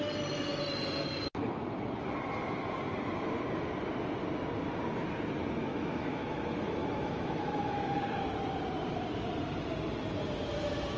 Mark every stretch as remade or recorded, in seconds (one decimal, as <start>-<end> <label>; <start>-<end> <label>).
0.0-5.7 recorded; 5.7-7.8 remade; 7.8-11.0 recorded